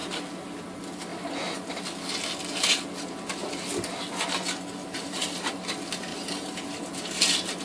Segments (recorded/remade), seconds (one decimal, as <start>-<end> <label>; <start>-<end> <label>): 0.0-1.1 recorded; 1.1-1.7 remade; 1.7-4.8 recorded; 4.8-5.5 remade; 5.5-6.1 recorded; 6.1-7.6 remade